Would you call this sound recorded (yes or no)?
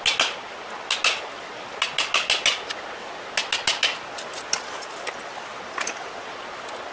yes